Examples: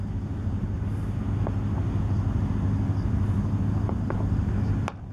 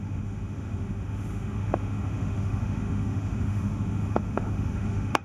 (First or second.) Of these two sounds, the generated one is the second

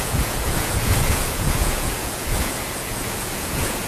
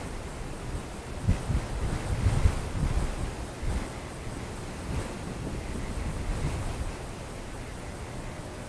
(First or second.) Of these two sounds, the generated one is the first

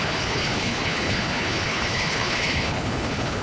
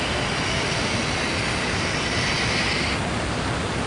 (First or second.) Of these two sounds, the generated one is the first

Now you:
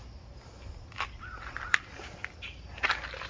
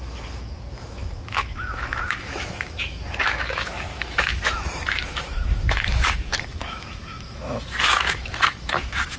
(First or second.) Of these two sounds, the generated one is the second